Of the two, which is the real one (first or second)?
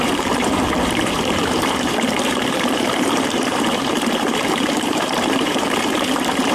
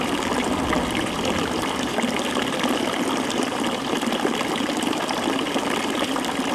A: second